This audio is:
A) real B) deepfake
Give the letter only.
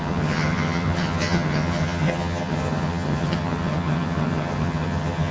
B